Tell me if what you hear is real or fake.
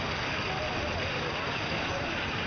real